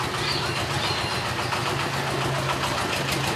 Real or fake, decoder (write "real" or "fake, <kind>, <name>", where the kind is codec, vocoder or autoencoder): real